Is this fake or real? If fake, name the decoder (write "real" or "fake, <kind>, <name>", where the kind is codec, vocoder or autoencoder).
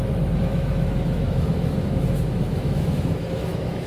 fake, autoencoder, DAC-VAE